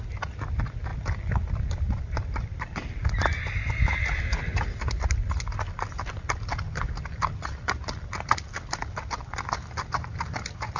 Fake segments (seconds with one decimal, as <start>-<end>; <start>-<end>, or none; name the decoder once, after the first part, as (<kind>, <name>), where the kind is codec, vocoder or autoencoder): none